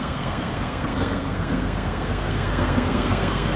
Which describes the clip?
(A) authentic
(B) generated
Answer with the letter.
B